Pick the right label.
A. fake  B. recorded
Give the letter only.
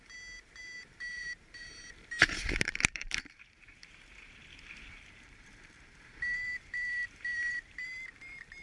A